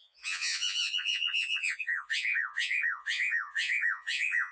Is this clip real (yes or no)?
no